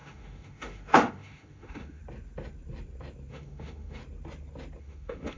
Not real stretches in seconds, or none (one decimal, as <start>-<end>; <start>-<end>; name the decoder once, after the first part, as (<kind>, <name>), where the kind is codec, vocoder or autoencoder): 0.0-2.0 (autoencoder, DAC-VAE); 3.3-4.0; 4.8-5.4